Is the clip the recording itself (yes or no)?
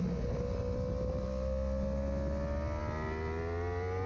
yes